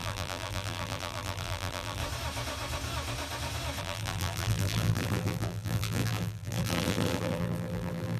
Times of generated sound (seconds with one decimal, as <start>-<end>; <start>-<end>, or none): 0.0-2.0; 3.8-8.2